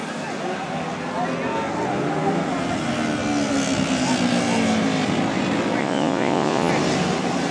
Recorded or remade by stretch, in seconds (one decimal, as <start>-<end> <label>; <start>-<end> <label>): 0.0-5.8 recorded; 5.8-6.7 remade; 6.7-7.5 recorded